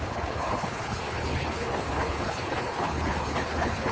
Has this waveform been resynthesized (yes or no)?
yes